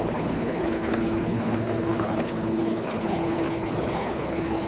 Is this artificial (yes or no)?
yes